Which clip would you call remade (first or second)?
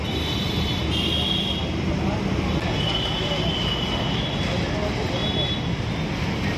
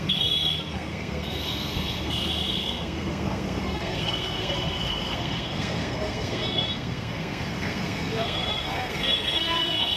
second